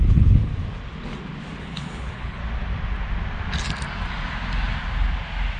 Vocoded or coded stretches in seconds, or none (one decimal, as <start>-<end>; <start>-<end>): 0.0-0.5; 1.6-2.4